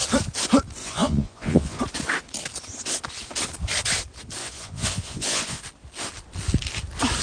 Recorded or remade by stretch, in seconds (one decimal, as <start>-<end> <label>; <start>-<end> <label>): 0.0-0.8 recorded; 0.8-1.8 remade; 1.8-4.4 recorded; 4.4-5.6 remade; 5.6-7.2 recorded